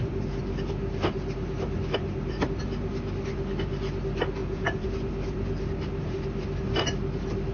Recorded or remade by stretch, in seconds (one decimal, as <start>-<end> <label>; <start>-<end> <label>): 0.0-4.4 recorded; 4.4-4.9 remade; 4.9-7.5 recorded